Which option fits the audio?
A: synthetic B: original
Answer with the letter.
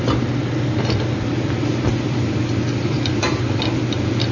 B